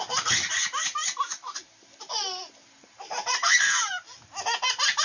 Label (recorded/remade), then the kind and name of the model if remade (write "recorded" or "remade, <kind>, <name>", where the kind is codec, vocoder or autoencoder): recorded